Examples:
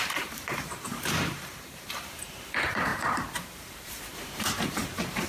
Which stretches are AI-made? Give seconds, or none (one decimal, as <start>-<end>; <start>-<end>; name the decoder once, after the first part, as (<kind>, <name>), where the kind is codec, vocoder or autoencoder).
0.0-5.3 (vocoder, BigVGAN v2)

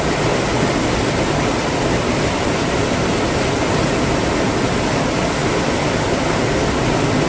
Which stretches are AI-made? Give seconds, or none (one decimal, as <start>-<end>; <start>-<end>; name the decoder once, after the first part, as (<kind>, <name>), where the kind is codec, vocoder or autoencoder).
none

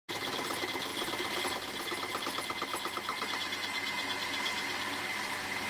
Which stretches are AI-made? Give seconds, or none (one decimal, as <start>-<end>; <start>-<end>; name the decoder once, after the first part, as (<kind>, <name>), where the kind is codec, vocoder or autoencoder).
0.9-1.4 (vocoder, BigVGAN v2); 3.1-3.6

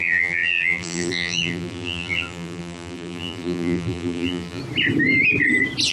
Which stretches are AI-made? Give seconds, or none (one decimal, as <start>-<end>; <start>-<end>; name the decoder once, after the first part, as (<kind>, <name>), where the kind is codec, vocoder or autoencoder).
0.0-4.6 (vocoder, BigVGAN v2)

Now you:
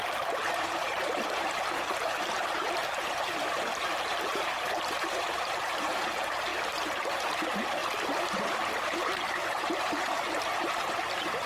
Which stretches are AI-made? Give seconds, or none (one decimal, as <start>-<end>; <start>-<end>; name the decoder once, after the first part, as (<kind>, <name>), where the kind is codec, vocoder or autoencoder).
0.5-6.5 (vocoder, BigVGAN v2); 7.1-7.8; 8.8-11.5

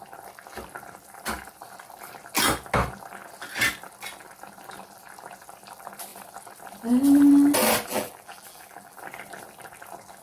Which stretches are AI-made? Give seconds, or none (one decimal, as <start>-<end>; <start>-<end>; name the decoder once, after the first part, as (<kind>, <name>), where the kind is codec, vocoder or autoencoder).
7.9-9.0 (vocoder, BigVGAN v2)

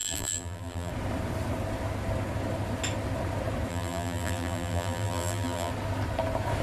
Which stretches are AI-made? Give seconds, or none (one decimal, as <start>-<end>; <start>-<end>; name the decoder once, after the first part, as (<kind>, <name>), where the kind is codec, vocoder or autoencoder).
0.0-0.9 (vocoder, BigVGAN v2); 3.7-5.7